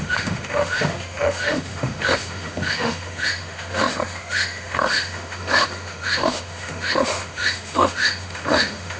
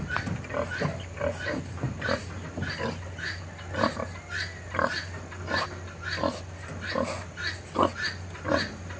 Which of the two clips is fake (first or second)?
first